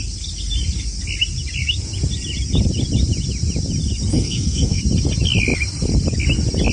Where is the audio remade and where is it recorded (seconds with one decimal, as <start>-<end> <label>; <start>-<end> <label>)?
0.0-4.1 recorded; 4.1-4.8 remade; 4.8-6.7 recorded